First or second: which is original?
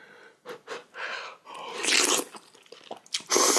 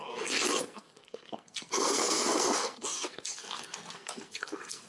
first